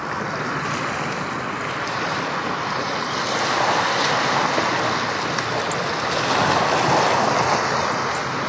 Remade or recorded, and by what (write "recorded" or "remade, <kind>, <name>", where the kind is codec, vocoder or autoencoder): recorded